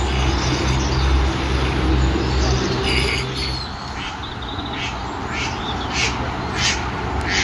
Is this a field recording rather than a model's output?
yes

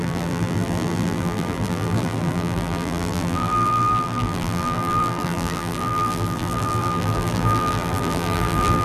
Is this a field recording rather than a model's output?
no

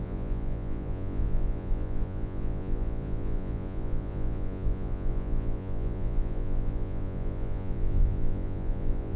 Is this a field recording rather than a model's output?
no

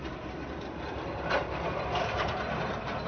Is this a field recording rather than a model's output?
yes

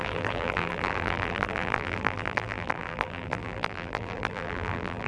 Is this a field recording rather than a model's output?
no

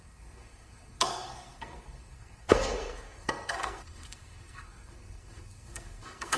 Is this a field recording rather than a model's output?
no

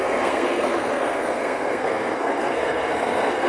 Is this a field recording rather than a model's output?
no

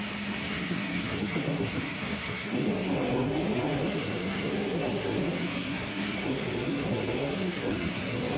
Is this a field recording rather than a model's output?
no